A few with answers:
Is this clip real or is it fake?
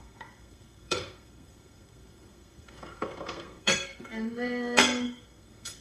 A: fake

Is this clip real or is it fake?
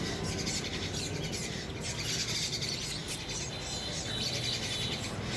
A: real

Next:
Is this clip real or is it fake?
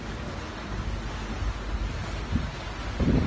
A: real